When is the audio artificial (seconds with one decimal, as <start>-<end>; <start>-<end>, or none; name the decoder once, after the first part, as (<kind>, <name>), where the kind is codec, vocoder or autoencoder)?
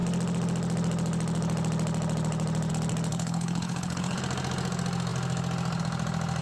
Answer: 3.1-4.2 (codec, HILCodec)